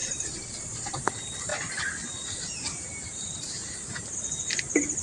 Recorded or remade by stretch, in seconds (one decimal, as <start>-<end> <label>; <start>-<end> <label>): 0.0-1.1 remade; 1.1-5.0 recorded